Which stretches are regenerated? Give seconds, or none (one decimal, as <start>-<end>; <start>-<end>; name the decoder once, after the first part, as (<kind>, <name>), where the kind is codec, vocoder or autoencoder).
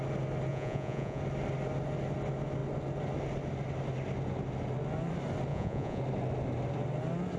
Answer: 0.5-1.2 (vocoder, Vocos); 5.5-6.0